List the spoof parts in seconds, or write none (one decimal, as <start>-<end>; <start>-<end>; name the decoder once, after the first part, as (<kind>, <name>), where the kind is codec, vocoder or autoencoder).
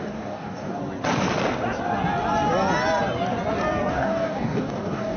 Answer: 0.0-0.8 (codec, DAC); 3.9-5.2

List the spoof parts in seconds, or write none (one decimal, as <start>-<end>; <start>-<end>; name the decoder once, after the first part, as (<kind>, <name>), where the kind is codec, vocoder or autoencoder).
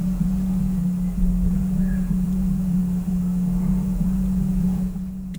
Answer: 0.0-0.8 (vocoder, Vocos); 1.5-2.8; 3.6-5.4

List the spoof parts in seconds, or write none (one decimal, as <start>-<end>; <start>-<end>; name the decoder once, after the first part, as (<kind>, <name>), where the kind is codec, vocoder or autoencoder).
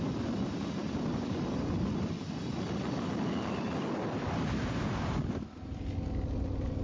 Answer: none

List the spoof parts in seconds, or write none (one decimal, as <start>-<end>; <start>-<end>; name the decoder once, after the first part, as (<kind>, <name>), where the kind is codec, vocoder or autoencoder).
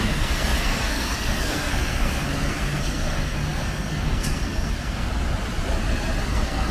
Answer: 0.0-5.1 (codec, SNAC); 6.3-6.7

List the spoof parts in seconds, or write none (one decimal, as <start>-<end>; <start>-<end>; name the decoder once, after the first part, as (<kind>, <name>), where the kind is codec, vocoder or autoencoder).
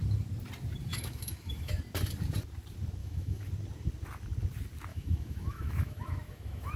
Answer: 0.9-1.8 (autoencoder, DAC-VAE); 3.0-3.5; 4.9-6.8